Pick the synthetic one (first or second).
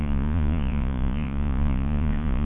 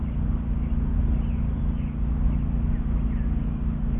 first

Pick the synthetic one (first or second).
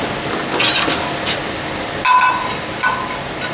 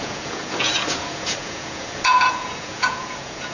second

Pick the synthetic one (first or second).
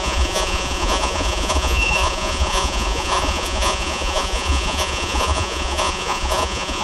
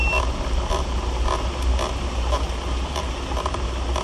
first